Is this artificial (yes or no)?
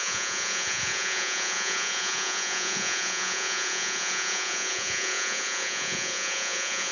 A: yes